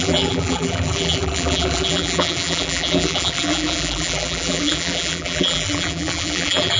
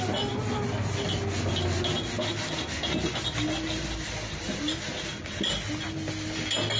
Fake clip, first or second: first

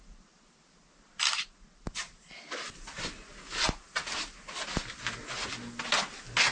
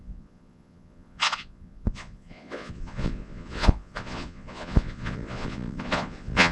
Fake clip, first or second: second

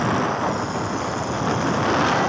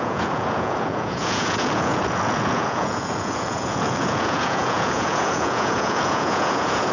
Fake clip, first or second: second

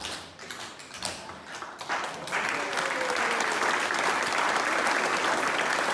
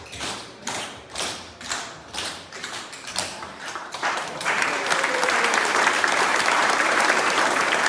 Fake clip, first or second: second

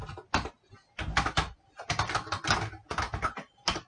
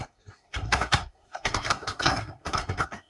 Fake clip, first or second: second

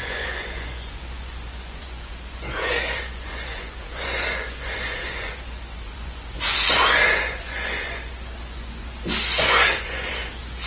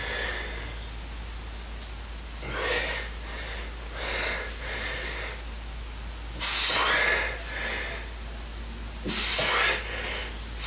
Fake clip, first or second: first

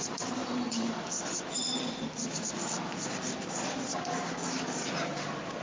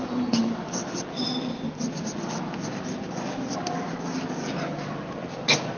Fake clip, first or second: first